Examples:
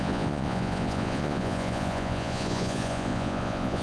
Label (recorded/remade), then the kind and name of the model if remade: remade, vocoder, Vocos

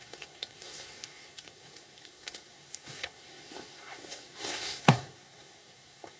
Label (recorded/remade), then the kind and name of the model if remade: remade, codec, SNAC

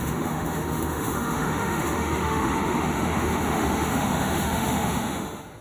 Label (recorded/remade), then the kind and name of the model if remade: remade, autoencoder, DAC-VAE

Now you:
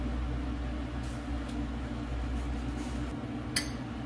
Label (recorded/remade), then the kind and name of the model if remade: recorded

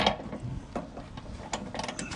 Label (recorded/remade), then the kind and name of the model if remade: recorded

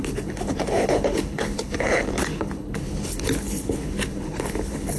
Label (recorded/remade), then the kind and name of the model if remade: remade, codec, HILCodec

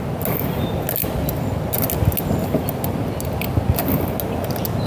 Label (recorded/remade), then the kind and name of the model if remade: recorded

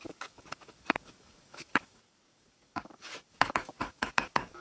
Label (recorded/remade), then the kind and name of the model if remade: remade, codec, DAC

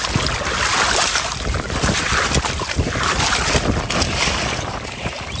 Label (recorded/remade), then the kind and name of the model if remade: recorded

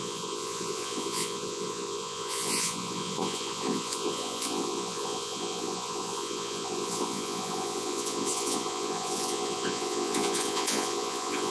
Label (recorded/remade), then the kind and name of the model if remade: remade, vocoder, Vocos